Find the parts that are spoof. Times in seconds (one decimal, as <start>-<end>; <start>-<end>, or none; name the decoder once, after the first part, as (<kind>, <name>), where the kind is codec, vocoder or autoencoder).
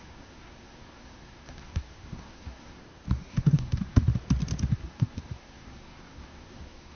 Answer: 0.0-2.8 (codec, SNAC); 3.3-4.1; 4.7-7.0